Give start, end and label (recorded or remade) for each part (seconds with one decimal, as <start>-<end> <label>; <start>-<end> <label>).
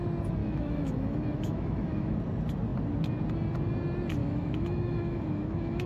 0.0-0.4 recorded; 0.4-2.2 remade; 2.2-4.2 recorded; 4.2-5.9 remade